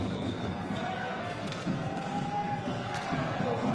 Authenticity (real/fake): fake